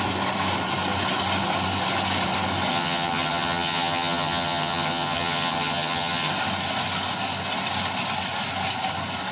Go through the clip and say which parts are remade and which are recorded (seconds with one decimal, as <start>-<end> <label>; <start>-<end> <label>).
0.0-2.7 recorded; 2.7-6.3 remade; 6.3-9.3 recorded